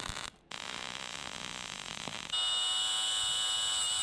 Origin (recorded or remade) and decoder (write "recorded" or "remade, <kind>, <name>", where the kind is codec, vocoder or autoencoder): recorded